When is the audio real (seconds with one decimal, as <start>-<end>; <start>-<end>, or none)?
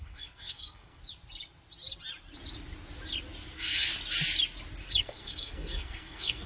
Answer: 1.0-3.5; 3.9-5.0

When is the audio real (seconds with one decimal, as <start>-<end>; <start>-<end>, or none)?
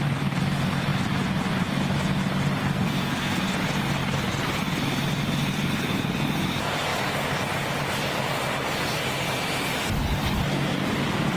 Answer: 0.0-2.6; 3.4-11.4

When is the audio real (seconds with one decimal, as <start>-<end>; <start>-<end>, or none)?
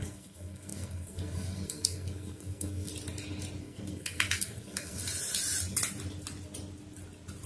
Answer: 2.9-3.6; 5.0-7.5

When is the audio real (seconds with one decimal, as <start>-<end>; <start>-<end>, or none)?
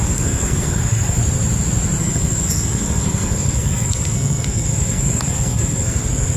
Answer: 1.2-2.0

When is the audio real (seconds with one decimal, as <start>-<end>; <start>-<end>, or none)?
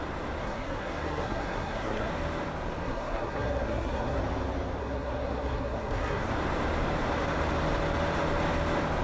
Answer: 0.0-0.4; 2.1-2.8; 4.2-4.8; 6.3-9.0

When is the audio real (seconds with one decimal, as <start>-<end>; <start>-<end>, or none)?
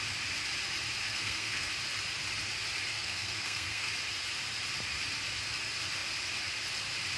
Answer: 0.0-1.0; 1.7-2.9; 3.9-7.2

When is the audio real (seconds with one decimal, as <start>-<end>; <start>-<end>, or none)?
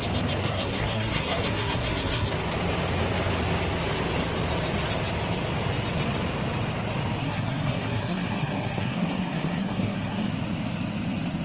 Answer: 0.0-0.4; 2.3-7.2; 10.3-11.4